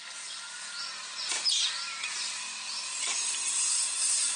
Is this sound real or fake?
fake